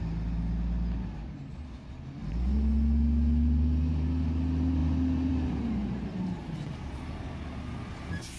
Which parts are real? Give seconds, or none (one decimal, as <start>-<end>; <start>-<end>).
0.0-5.8; 6.4-8.4